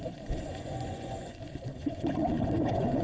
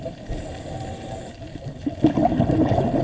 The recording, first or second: second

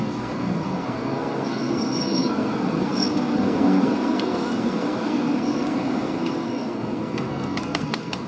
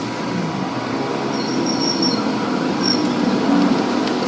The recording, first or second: second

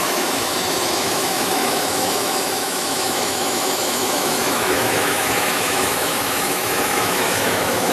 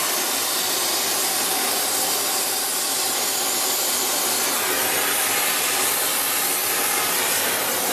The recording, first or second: second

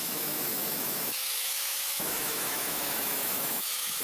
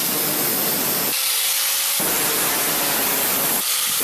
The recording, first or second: second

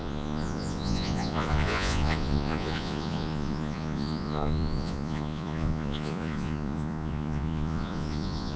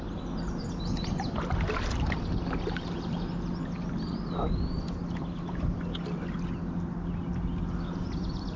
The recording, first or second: second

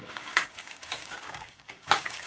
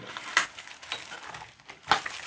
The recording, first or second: second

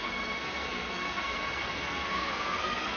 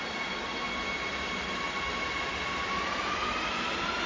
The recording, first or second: second